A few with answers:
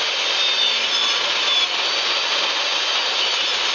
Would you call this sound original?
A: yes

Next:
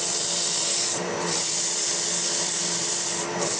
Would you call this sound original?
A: no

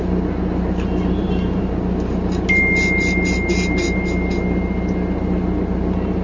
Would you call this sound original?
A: yes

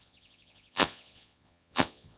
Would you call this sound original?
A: no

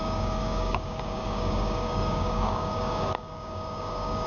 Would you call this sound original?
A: no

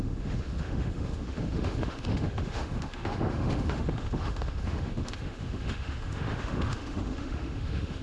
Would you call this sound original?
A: no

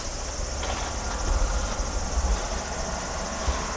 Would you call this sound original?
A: yes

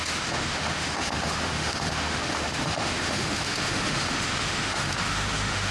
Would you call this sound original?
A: no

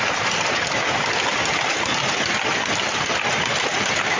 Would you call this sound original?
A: yes